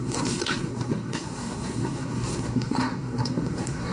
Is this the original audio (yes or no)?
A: no